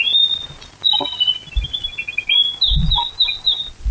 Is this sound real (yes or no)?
yes